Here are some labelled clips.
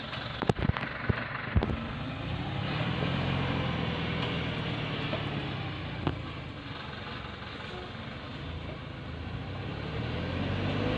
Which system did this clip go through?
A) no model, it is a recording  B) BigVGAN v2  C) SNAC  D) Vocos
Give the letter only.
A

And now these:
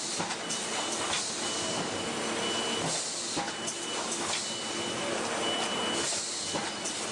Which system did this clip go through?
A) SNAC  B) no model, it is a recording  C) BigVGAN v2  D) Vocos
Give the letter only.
B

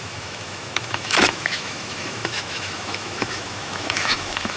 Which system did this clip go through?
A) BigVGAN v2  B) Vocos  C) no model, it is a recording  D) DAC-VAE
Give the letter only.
D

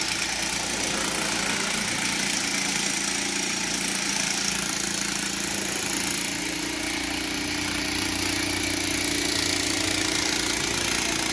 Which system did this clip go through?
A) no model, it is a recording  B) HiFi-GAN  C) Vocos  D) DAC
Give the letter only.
A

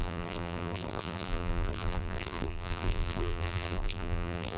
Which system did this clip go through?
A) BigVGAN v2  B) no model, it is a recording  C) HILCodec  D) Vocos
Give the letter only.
A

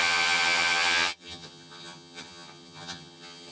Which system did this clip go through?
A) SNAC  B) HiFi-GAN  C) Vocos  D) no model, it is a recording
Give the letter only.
B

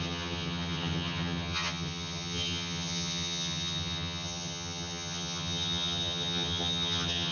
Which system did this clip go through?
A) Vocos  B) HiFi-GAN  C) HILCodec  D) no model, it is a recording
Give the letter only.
B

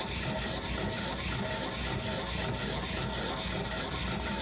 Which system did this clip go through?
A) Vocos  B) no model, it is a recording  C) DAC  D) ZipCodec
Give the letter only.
B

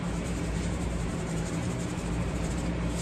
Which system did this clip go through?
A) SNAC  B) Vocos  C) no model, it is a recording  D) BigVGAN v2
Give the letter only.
D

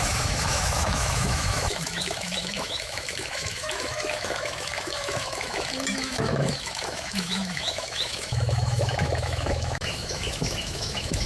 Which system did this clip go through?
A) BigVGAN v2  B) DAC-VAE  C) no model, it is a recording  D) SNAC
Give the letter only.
B